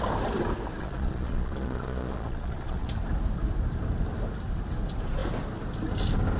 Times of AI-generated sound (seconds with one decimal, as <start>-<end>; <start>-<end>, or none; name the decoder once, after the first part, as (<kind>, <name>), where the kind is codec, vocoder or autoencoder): 0.8-2.9 (vocoder, Vocos)

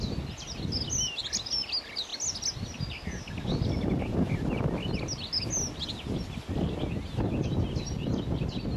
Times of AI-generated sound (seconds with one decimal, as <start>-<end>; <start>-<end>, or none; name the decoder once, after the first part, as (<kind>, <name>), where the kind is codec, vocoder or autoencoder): none

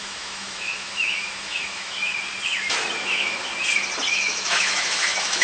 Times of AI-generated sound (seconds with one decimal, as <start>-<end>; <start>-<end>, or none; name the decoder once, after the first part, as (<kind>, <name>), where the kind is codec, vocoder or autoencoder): 0.0-2.1 (autoencoder, DAC-VAE); 2.9-3.5; 4.1-5.4

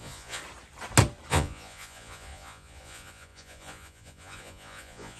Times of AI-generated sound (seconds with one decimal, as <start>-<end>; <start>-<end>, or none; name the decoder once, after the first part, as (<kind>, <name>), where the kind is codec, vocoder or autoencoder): 0.0-0.4 (vocoder, Vocos); 1.3-5.2

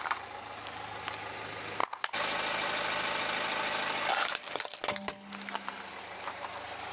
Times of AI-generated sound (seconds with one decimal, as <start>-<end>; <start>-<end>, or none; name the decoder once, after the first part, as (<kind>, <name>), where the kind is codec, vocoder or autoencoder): none

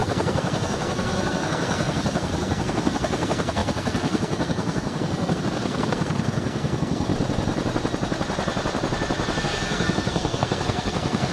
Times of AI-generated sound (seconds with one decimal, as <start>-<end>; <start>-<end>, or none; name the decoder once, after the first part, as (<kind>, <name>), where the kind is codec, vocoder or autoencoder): 0.0-7.1 (codec, SNAC); 9.4-11.3

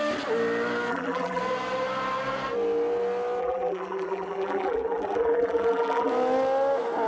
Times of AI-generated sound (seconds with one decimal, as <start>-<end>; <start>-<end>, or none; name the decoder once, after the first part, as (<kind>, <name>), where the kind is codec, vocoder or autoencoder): 0.9-1.4 (vocoder, BigVGAN v2); 3.4-6.1